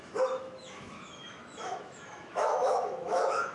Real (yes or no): no